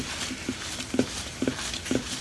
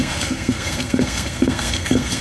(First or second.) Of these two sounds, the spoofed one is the second